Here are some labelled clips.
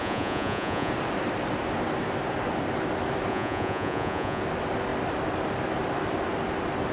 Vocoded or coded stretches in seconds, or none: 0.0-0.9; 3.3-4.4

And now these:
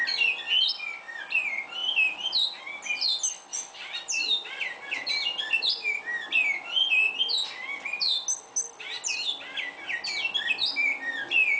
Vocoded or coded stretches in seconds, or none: 1.8-2.6; 3.5-6.0

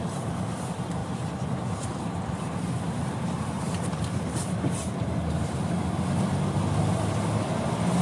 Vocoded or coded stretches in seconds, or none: 1.0-5.8

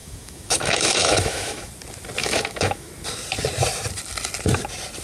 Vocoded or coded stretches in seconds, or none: 0.0-1.7; 2.2-2.9

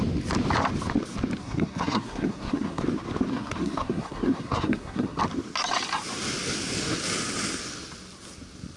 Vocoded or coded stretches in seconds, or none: 1.4-2.8; 3.3-5.2